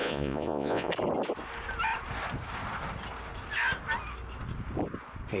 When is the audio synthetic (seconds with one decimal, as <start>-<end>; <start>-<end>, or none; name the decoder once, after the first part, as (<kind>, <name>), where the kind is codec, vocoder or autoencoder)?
0.0-0.9 (vocoder, Vocos)